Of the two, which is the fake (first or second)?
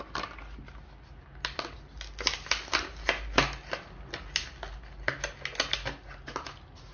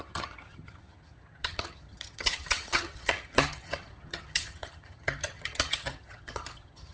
second